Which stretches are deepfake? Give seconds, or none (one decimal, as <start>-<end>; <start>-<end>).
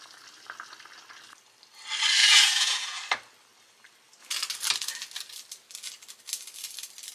2.2-3.0